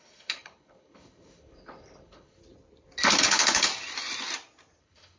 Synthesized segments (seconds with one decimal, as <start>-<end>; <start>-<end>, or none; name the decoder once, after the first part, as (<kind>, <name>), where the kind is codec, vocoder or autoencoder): 0.0-2.4 (codec, HILCodec); 3.2-3.7; 4.8-5.2